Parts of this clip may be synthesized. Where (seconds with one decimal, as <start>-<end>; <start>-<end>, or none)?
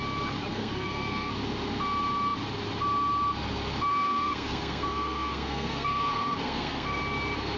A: 0.5-1.3; 3.9-7.0